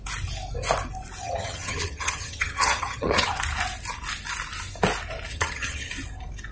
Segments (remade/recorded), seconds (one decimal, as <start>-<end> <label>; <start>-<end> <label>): 0.0-1.2 recorded; 1.2-3.4 remade; 3.4-5.3 recorded; 5.3-5.9 remade; 5.9-6.5 recorded